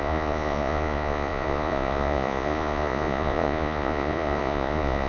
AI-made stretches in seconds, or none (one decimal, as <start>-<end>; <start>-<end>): 0.0-5.1